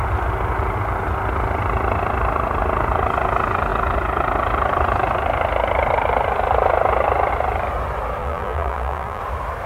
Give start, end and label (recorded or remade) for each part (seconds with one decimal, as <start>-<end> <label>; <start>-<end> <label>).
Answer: 0.0-8.2 recorded; 8.2-9.2 remade; 9.2-9.7 recorded